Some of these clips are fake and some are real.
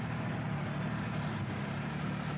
real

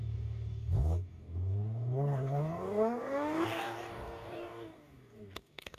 fake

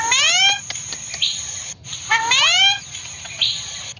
real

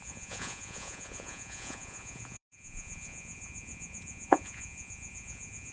fake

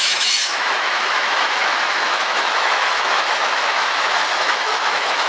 fake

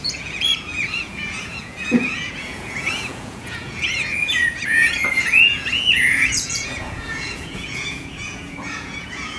fake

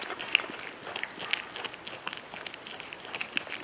real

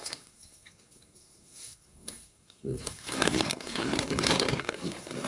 fake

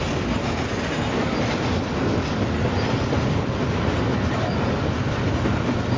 real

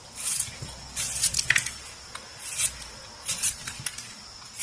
real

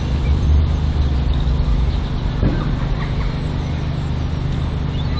real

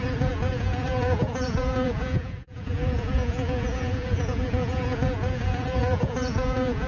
fake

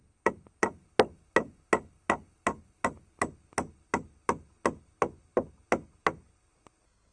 real